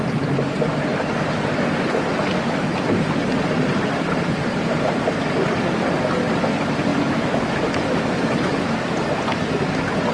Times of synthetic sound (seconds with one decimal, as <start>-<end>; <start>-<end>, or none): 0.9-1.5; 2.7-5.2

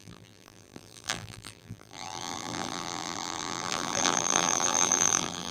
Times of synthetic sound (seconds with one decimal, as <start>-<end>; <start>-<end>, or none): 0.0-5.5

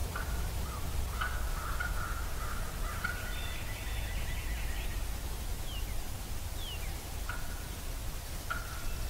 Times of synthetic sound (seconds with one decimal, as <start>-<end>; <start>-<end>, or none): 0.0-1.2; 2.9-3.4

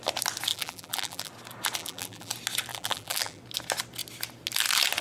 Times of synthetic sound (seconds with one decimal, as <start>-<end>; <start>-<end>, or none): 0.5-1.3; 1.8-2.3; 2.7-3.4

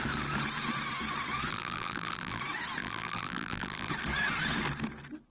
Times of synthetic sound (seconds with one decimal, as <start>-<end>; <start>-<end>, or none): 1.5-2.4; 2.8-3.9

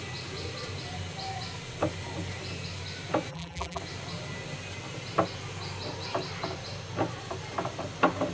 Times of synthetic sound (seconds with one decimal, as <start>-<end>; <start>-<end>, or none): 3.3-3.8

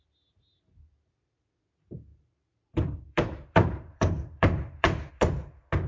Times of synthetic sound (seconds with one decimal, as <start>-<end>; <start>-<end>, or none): 2.1-5.1

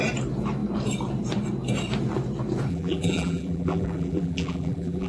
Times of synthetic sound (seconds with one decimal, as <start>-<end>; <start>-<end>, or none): 2.7-5.1